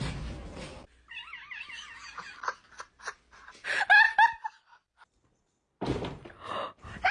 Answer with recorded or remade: recorded